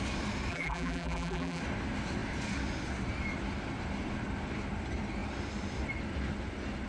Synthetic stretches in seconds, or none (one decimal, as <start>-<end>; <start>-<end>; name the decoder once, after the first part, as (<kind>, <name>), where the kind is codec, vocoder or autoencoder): 0.5-1.6 (vocoder, BigVGAN v2)